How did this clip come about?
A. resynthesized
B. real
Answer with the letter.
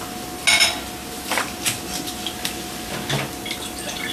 B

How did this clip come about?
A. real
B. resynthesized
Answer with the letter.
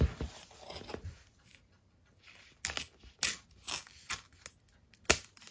A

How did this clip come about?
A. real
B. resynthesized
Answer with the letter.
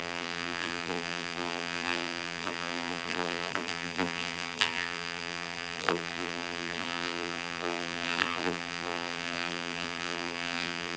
B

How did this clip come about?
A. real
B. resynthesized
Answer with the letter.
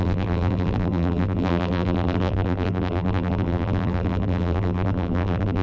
B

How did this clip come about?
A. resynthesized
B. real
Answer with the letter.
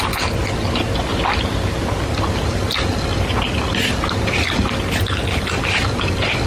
B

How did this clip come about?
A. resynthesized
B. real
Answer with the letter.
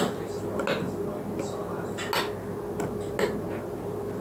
B